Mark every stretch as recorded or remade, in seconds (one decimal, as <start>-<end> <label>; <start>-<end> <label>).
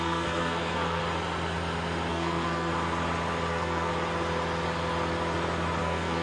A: 0.0-1.0 remade; 1.0-2.1 recorded; 2.1-2.7 remade; 2.7-3.5 recorded; 3.5-3.9 remade; 3.9-5.8 recorded; 5.8-6.2 remade